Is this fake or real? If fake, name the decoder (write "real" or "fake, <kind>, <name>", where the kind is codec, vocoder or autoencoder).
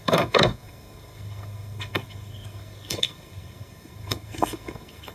fake, codec, SNAC